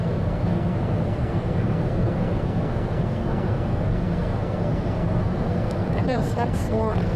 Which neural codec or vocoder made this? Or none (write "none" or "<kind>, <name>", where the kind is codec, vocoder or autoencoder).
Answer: codec, SNAC